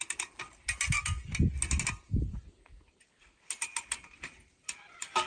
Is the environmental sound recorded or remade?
recorded